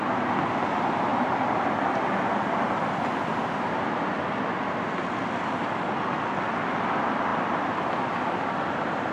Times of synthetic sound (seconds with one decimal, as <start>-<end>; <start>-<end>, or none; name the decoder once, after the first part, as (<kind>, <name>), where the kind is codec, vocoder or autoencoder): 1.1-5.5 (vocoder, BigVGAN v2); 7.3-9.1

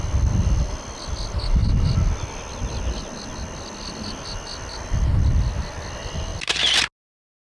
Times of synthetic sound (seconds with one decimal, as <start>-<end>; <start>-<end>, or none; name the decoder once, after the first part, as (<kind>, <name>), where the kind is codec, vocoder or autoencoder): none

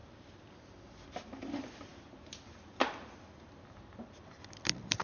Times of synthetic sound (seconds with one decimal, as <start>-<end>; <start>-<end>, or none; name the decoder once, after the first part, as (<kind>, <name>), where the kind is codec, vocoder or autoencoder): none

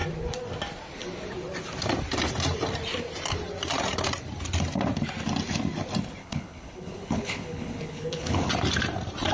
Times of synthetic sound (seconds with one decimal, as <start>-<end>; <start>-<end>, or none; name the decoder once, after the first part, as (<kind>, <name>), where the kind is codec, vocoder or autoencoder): 6.2-8.5 (codec, HILCodec)